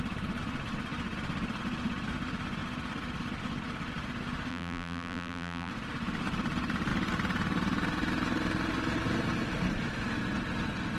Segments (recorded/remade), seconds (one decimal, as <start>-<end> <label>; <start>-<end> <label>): 0.0-4.5 recorded; 4.5-5.7 remade; 5.7-11.0 recorded